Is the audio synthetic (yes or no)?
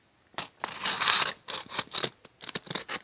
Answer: no